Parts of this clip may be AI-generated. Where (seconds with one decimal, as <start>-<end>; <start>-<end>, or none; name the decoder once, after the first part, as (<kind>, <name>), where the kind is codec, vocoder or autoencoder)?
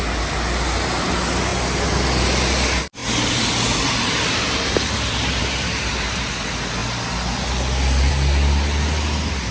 none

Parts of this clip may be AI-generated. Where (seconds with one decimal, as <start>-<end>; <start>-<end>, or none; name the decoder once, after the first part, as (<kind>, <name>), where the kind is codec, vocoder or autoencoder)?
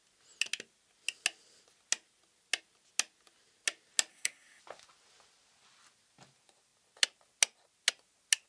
4.1-4.6 (codec, SNAC)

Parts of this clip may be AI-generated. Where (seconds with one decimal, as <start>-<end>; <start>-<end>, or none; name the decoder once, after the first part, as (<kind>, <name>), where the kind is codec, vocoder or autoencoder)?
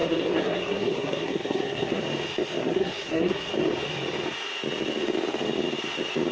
0.0-2.0 (codec, SNAC); 2.6-3.5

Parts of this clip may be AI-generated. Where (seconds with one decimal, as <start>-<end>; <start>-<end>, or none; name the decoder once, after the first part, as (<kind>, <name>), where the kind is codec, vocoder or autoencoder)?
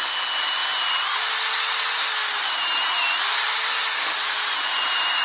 none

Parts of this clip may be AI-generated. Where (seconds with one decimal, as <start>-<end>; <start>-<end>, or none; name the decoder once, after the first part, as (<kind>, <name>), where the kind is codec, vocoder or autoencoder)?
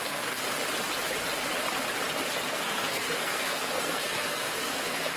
0.0-0.4 (codec, SNAC); 2.5-5.2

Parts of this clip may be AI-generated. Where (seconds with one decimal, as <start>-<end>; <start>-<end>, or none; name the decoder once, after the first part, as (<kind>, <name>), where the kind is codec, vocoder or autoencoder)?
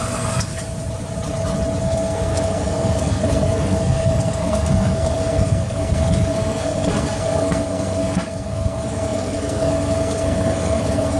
0.0-0.5 (codec, SNAC); 1.8-11.2